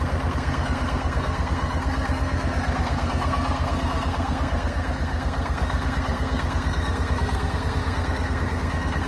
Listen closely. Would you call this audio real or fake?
fake